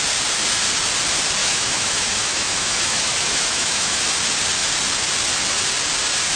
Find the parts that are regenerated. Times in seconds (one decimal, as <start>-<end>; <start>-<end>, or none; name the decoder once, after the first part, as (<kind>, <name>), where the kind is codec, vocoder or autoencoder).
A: 1.4-4.0 (autoencoder, DAC-VAE)